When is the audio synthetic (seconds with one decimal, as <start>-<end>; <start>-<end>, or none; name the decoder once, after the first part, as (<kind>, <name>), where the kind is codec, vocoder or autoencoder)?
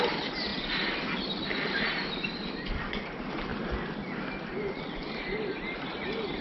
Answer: none